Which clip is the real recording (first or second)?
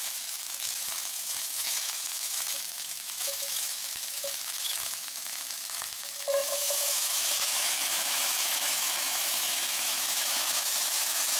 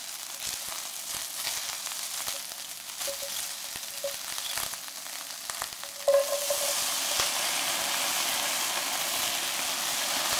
second